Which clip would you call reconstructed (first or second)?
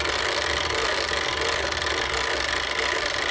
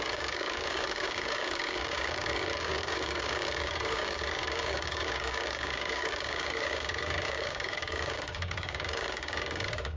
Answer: second